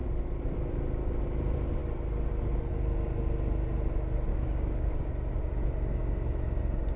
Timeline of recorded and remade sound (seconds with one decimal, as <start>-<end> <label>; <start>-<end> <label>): 0.0-4.3 recorded; 4.3-5.1 remade; 5.1-7.0 recorded